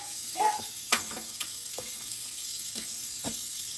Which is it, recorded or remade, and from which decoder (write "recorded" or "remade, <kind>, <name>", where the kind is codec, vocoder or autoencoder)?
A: remade, codec, SNAC